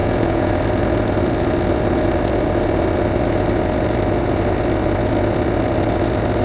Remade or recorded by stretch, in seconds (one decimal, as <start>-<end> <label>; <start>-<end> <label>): 0.0-0.5 remade; 0.5-6.4 recorded